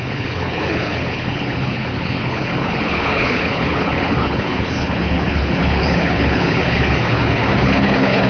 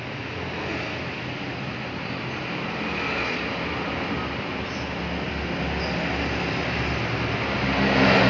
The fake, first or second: first